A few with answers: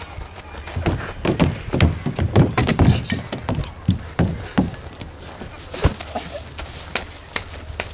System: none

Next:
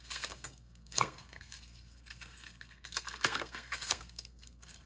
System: codec, SNAC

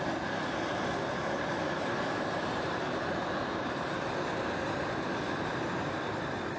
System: vocoder, BigVGAN v2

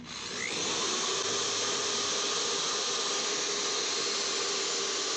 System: none